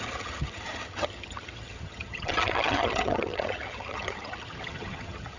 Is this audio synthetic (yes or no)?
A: yes